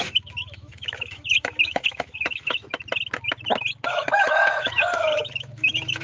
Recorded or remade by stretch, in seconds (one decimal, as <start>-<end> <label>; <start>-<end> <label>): 0.0-2.6 remade; 2.6-3.9 recorded; 3.9-6.0 remade